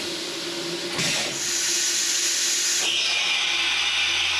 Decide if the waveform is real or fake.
real